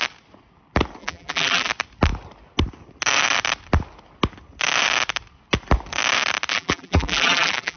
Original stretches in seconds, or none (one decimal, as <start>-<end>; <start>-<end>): 0.0-1.0; 1.7-6.5